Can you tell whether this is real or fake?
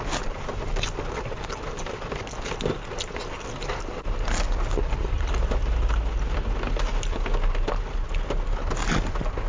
real